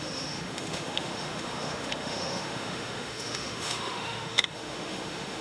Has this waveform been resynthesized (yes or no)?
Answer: yes